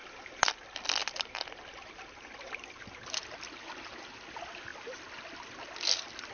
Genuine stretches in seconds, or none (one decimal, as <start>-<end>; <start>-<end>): 0.0-6.3